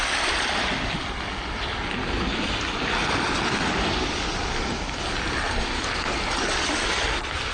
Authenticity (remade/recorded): recorded